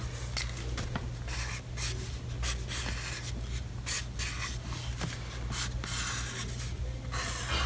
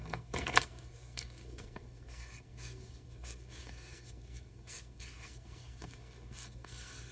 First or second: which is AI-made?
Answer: second